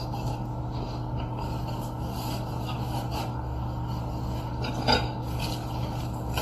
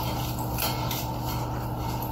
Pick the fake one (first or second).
first